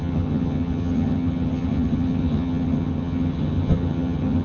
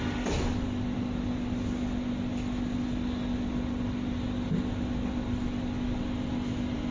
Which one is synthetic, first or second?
first